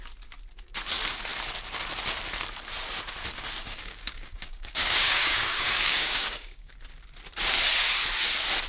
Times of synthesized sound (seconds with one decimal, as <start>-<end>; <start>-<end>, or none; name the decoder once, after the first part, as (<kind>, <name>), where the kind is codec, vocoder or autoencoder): 3.6-6.7 (codec, DAC)